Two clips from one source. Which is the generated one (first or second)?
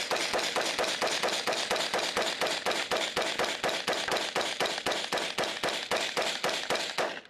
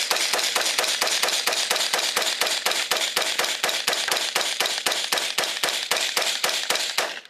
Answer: second